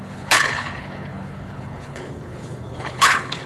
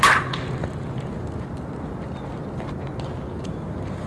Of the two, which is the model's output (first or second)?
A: first